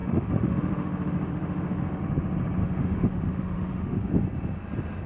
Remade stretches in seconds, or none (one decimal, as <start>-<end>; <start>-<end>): 0.0-2.0; 2.6-4.1